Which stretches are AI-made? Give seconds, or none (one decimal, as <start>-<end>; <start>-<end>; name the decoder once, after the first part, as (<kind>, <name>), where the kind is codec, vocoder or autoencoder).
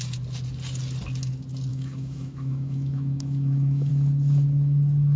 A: 1.7-3.9 (autoencoder, DAC-VAE)